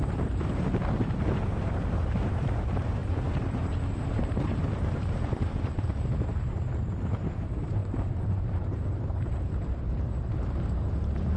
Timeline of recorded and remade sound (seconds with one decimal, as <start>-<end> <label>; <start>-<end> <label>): 0.0-11.4 remade